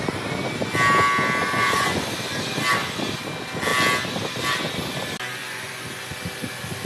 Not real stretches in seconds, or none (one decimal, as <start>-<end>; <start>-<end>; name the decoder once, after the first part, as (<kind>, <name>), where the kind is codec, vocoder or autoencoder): 1.4-2.0 (vocoder, Vocos); 5.4-6.0